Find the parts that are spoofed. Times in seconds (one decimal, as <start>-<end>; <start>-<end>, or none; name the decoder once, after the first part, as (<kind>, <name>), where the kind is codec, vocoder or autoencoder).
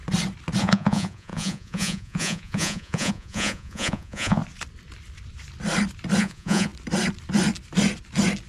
0.6-4.4 (vocoder, Vocos); 6.2-6.7